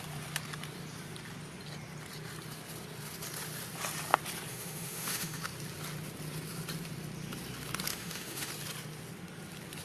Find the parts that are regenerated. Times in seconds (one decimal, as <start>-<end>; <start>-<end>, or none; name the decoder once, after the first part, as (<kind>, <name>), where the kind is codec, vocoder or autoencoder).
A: 4.5-5.4 (autoencoder, DAC-VAE); 7.9-8.5

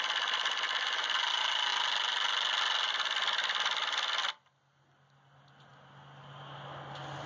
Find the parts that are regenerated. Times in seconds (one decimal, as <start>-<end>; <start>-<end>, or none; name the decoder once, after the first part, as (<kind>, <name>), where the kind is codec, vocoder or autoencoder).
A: none

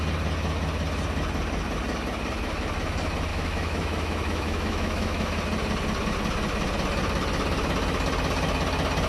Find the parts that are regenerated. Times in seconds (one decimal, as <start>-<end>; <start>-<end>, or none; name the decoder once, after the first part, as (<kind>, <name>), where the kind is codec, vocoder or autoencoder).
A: 3.3-5.4 (autoencoder, DAC-VAE)

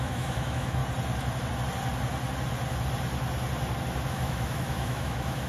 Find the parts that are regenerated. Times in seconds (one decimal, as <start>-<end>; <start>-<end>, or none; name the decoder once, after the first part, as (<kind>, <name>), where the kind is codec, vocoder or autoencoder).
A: 0.0-0.8 (autoencoder, DAC-VAE); 4.1-5.5

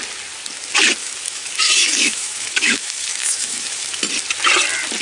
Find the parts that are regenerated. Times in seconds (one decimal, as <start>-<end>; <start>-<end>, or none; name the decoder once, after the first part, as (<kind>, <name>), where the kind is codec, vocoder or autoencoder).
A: 1.0-4.0 (autoencoder, DAC-VAE)

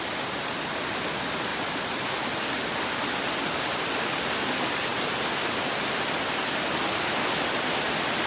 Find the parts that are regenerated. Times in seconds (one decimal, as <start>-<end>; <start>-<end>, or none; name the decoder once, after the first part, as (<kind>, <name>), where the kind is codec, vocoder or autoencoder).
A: none

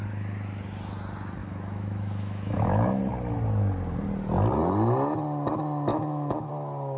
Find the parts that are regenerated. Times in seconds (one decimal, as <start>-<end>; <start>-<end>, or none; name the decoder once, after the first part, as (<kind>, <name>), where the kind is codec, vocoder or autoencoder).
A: 1.4-3.0 (autoencoder, DAC-VAE); 5.9-6.5

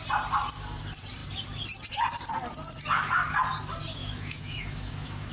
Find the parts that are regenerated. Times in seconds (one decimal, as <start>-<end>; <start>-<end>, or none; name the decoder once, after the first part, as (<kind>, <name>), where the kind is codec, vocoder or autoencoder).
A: 4.0-5.3 (autoencoder, DAC-VAE)